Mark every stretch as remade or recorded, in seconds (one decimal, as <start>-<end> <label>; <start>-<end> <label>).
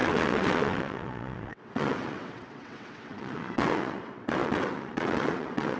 0.0-5.8 remade